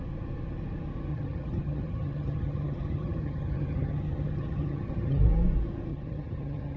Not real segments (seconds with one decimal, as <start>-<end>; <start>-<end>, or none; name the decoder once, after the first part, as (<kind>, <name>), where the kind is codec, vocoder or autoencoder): 1.1-5.2 (vocoder, HiFi-GAN); 5.9-6.8